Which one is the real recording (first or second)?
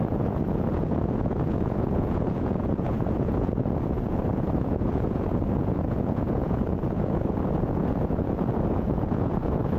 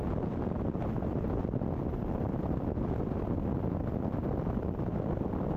second